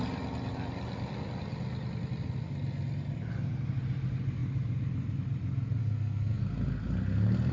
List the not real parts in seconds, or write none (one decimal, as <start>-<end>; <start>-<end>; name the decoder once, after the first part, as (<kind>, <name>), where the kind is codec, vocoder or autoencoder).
5.8-6.4 (codec, SNAC)